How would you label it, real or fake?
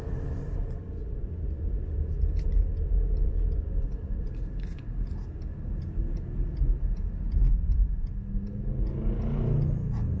real